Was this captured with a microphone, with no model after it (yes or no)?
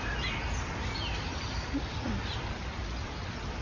yes